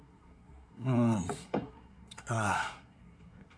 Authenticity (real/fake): fake